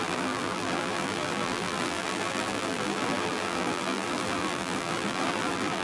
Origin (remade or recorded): remade